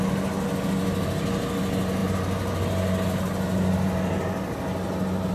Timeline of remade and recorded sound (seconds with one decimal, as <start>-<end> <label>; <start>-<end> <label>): 0.0-5.3 recorded